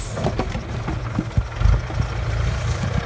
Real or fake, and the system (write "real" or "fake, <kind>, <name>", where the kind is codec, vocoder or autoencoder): real